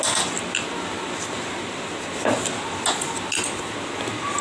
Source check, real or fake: real